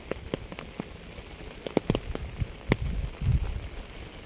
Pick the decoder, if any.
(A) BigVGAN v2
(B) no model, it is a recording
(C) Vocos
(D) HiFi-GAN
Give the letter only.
B